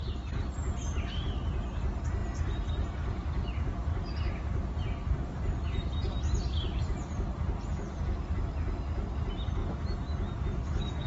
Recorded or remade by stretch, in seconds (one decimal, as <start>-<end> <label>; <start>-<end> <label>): 0.0-11.1 recorded